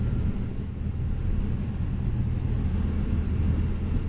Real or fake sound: real